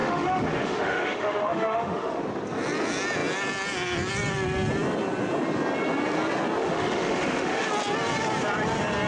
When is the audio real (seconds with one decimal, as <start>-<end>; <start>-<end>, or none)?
2.2-6.6; 7.7-9.1